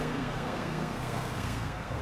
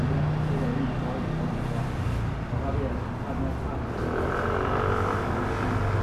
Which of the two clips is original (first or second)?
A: second